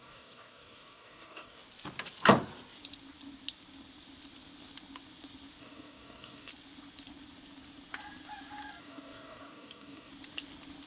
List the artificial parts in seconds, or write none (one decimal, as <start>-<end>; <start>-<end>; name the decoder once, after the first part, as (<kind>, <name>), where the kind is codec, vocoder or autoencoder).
0.0-1.6 (codec, DAC); 5.6-6.5; 8.8-10.1

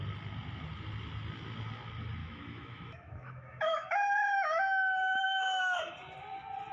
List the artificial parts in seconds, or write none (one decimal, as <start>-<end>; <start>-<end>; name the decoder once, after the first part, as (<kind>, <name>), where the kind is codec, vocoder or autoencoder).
2.2-5.8 (autoencoder, DAC-VAE)

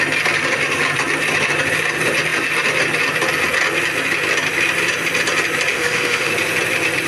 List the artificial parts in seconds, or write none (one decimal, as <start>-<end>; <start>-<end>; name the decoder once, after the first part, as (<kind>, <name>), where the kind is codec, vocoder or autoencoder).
5.7-6.3 (autoencoder, DAC-VAE)

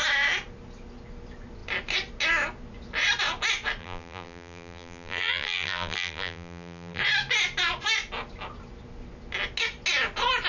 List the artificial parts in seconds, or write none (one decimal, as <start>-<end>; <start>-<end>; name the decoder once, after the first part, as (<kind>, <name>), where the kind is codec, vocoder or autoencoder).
3.8-7.0 (vocoder, BigVGAN v2)

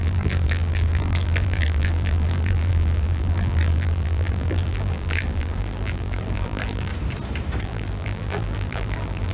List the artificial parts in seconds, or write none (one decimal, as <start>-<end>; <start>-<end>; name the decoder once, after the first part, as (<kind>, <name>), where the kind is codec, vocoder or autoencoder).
0.0-6.9 (vocoder, BigVGAN v2); 7.6-9.3